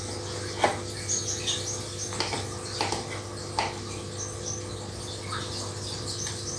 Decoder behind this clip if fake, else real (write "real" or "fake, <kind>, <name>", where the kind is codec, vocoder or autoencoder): real